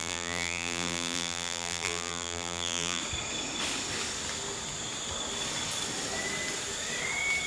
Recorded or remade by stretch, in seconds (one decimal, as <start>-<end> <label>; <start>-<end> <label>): 0.0-3.0 remade; 3.0-7.5 recorded